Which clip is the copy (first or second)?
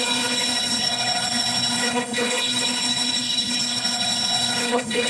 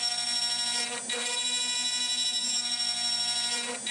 first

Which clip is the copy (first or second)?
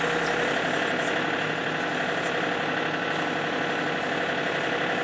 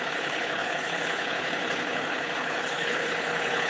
second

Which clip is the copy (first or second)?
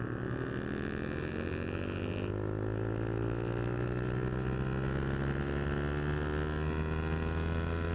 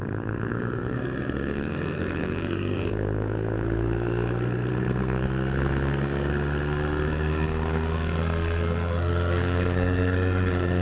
second